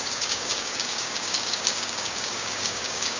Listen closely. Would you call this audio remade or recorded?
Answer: remade